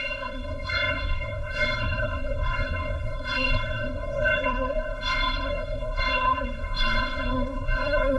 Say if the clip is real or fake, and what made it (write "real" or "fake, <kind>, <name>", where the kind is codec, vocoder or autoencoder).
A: fake, codec, SNAC